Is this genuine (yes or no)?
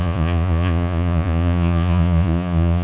no